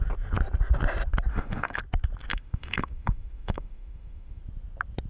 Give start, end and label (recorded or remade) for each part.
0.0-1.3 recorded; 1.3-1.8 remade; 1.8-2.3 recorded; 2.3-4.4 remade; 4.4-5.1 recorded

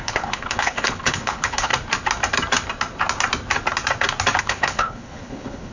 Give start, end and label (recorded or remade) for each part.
0.0-1.7 remade; 1.7-4.4 recorded; 4.4-5.7 remade

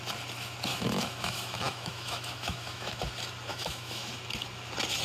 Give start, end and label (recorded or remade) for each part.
0.0-0.7 recorded; 0.7-3.0 remade; 3.0-3.5 recorded; 3.5-4.1 remade; 4.1-5.0 recorded

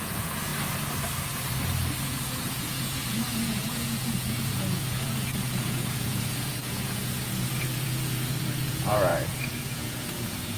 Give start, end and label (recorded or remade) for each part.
0.0-0.5 remade; 0.5-2.0 recorded; 2.0-10.6 remade

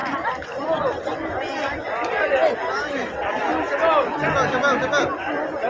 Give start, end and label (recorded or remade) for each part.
0.0-5.7 recorded

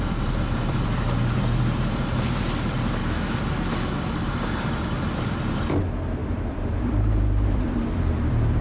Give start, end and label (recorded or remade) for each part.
0.0-3.0 remade; 3.0-3.9 recorded; 3.9-8.6 remade

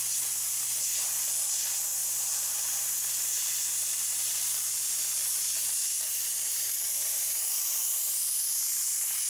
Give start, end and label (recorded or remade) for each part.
0.0-2.0 recorded; 2.0-4.7 remade; 4.7-5.2 recorded; 5.2-8.3 remade; 8.3-9.3 recorded